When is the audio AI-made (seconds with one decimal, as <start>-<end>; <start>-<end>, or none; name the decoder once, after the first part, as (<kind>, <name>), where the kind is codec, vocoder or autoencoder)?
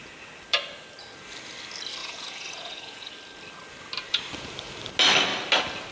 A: 2.0-3.1 (vocoder, Vocos)